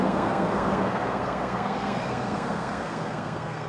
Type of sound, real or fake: fake